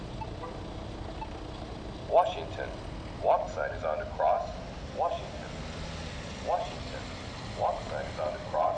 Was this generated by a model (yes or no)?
no